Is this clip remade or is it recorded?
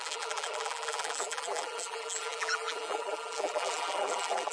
remade